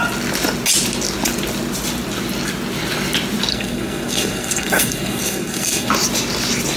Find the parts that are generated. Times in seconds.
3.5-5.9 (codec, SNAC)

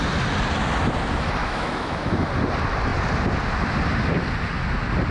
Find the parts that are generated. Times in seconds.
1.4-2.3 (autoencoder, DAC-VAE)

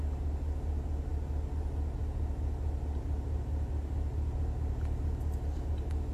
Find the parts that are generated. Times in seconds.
none